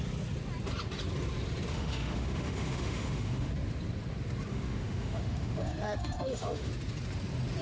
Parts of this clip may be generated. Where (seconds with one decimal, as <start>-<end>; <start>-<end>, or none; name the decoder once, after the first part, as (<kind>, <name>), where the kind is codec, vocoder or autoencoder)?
1.7-3.5 (autoencoder, DAC-VAE); 4.5-6.7